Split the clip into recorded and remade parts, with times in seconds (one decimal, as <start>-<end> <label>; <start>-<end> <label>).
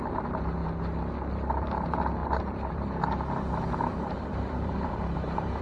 0.0-2.2 recorded; 2.2-2.8 remade; 2.8-3.9 recorded; 3.9-5.6 remade